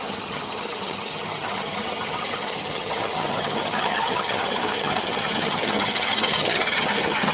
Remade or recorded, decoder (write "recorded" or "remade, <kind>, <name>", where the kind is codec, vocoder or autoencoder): remade, vocoder, HiFi-GAN